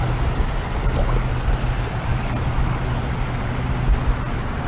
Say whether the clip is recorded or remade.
recorded